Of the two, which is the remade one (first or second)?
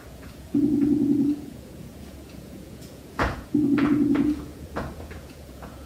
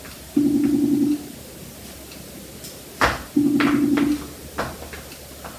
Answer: first